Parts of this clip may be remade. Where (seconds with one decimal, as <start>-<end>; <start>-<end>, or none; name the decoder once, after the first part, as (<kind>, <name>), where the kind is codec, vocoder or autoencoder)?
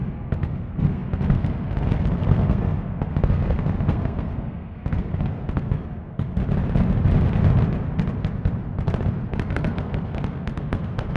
0.0-6.4 (codec, SNAC); 9.3-11.2